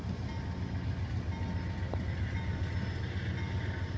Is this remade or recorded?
recorded